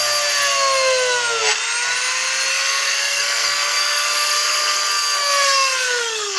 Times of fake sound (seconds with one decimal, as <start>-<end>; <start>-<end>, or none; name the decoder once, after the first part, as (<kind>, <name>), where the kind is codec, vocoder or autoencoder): 2.5-6.4 (codec, SNAC)